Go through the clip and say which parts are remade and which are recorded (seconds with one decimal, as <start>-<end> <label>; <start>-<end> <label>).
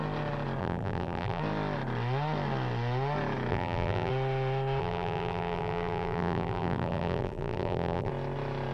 0.0-0.6 recorded; 0.6-1.4 remade; 1.4-3.5 recorded; 3.5-4.1 remade; 4.1-4.8 recorded; 4.8-8.1 remade; 8.1-8.7 recorded